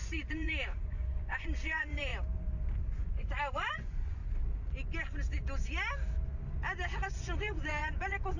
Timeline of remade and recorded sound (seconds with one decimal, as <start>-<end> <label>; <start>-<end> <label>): 0.0-2.1 remade; 2.1-3.0 recorded; 3.0-4.2 remade; 4.2-7.2 recorded; 7.2-8.4 remade

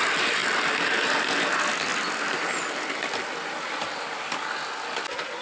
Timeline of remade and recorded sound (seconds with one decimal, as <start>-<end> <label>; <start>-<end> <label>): 0.0-5.4 recorded

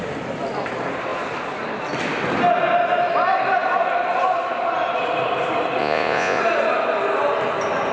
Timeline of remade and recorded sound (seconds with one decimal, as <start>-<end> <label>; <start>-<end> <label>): 0.0-5.8 recorded; 5.8-6.4 remade; 6.4-7.9 recorded

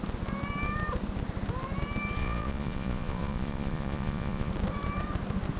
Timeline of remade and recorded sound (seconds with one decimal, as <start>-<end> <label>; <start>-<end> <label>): 0.0-2.2 recorded; 2.2-4.5 remade; 4.5-5.6 recorded